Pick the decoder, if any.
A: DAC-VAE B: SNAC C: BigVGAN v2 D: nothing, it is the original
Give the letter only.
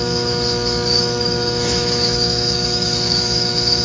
A